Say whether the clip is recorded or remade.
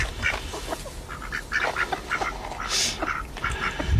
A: recorded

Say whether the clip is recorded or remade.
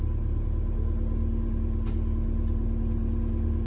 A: recorded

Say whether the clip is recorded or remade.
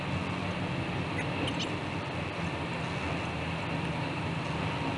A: recorded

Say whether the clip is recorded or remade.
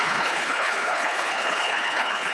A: remade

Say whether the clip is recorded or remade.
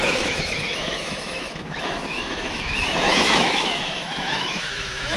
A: remade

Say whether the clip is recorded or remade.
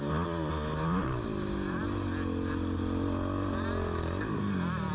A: recorded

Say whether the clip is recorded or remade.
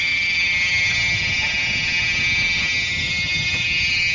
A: remade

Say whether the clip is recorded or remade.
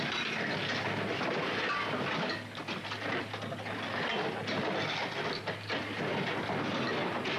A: recorded